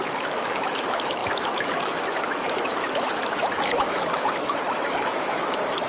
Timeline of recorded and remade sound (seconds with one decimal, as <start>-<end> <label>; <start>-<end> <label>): 0.0-5.9 remade